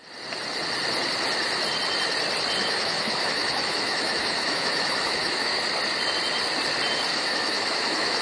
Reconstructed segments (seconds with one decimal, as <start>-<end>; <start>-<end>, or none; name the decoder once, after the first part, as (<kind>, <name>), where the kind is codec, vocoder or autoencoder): 2.6-5.5 (autoencoder, DAC-VAE); 7.1-8.2